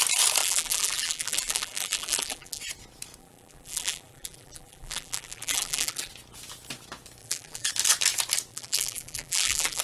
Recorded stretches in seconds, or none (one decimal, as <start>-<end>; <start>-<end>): 0.0-0.4; 2.6-3.2; 6.1-7.2; 7.7-8.5

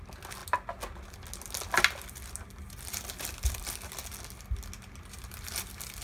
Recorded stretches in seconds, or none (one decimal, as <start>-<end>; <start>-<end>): 0.0-6.0

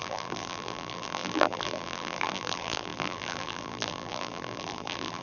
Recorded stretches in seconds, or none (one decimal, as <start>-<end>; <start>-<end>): none

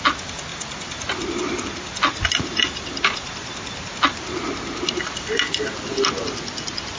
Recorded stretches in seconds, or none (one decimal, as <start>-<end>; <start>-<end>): 0.0-7.0

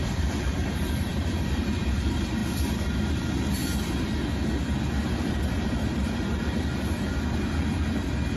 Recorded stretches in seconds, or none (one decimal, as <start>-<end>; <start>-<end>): 3.6-5.2

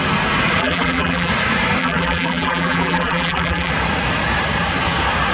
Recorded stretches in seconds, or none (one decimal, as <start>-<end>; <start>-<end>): 0.0-0.6; 1.3-1.8; 3.7-5.3